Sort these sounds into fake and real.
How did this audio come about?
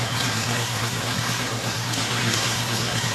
fake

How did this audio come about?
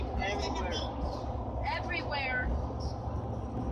real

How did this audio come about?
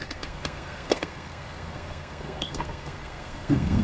fake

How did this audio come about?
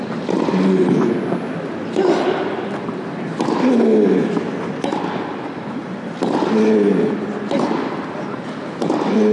real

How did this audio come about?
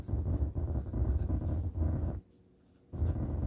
real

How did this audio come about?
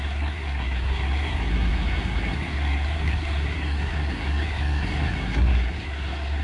fake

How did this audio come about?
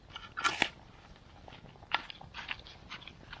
real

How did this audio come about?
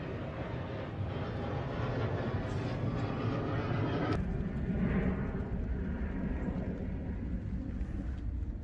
real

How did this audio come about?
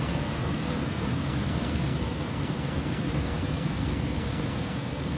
fake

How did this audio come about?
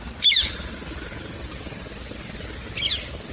real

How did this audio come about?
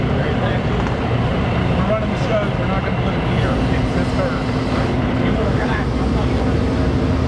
real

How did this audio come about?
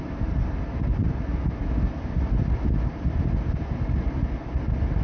real